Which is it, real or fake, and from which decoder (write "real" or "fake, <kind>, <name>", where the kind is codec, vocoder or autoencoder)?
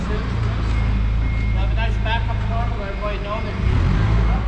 real